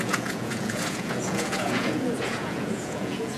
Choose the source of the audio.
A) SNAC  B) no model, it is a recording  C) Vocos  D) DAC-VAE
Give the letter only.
C